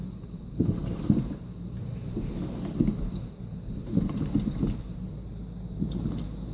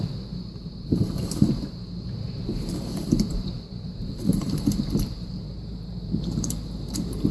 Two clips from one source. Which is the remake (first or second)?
second